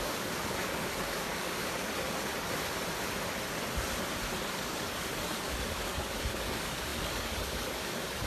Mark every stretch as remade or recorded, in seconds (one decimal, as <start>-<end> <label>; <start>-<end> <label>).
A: 0.0-2.3 remade; 2.3-4.5 recorded; 4.5-8.3 remade